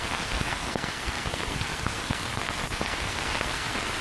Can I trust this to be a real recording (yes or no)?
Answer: no